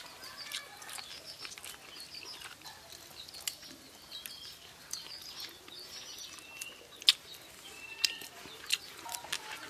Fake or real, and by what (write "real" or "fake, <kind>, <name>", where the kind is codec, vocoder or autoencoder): real